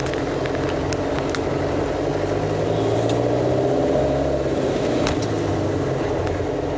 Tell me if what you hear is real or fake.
real